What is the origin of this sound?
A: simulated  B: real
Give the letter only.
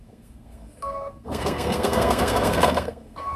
A